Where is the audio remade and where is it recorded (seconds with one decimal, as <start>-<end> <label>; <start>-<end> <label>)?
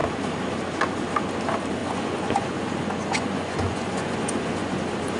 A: 0.0-1.8 recorded; 1.8-4.8 remade; 4.8-5.2 recorded